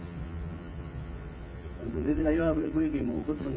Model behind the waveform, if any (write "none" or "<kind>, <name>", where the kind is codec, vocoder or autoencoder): vocoder, Vocos